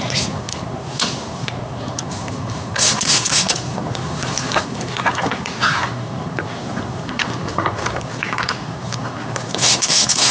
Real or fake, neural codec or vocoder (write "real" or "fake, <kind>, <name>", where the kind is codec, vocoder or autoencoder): fake, codec, SNAC